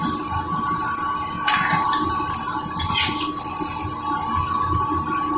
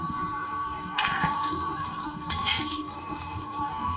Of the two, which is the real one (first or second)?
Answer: first